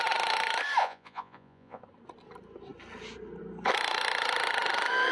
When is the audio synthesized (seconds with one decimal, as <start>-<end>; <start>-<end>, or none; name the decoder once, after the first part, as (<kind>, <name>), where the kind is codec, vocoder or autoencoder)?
0.8-1.8 (vocoder, Vocos)